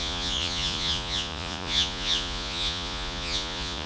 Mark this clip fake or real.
fake